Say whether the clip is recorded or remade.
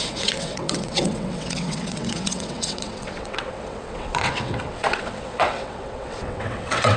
remade